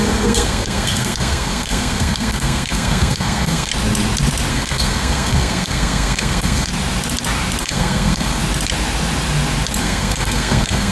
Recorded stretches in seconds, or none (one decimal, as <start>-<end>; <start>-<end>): 3.7-4.5; 6.7-7.6; 8.4-9.8